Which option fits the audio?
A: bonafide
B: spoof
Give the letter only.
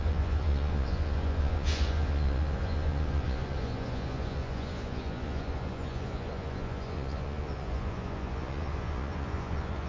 B